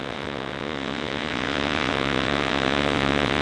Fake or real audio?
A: fake